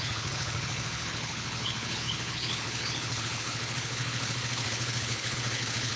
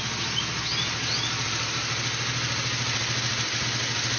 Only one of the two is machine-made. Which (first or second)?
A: first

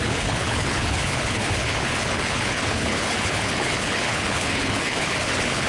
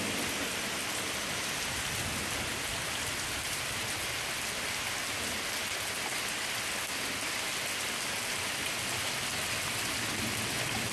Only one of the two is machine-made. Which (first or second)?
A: first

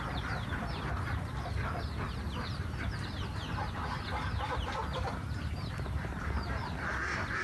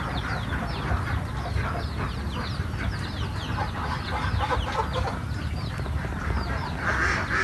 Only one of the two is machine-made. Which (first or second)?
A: first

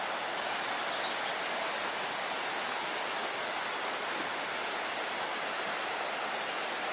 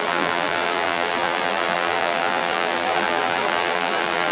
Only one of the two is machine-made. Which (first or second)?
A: second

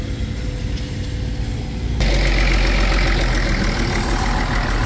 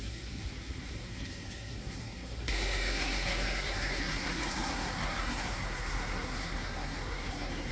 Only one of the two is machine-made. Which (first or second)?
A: second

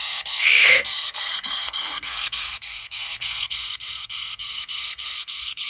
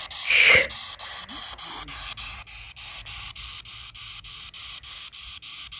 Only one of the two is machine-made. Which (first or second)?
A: first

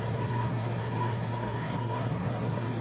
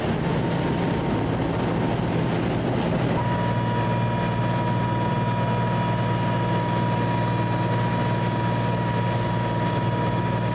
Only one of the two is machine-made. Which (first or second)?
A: first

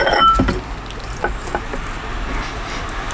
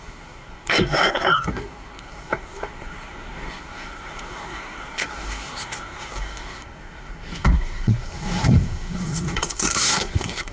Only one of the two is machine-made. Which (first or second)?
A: second